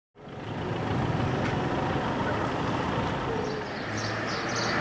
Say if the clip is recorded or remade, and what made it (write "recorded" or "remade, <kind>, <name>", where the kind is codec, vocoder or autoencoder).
recorded